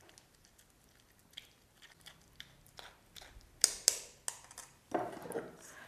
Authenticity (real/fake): real